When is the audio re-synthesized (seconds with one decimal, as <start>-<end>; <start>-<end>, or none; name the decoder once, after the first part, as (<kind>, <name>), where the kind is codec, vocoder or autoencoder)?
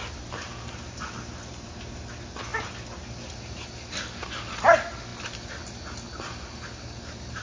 none